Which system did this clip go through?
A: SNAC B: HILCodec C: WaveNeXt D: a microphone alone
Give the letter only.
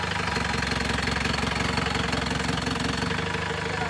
D